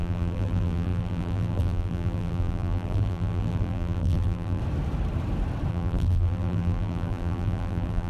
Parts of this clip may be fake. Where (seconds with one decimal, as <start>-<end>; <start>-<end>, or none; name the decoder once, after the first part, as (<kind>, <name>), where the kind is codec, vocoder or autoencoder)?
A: 0.0-4.6 (vocoder, BigVGAN v2); 5.7-8.1